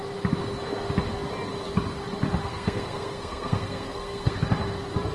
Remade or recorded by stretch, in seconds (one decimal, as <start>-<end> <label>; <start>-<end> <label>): 0.0-2.4 recorded; 2.4-4.4 remade; 4.4-5.1 recorded